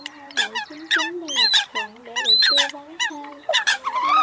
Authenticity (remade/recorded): remade